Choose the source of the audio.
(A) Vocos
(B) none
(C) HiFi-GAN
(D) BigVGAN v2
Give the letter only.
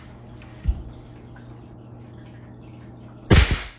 B